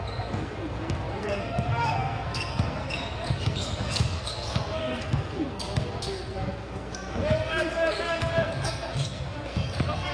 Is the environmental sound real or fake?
fake